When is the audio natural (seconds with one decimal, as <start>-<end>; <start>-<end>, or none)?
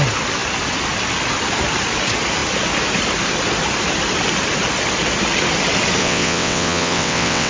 0.0-6.0